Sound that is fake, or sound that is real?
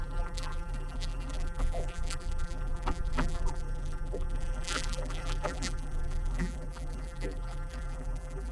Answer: fake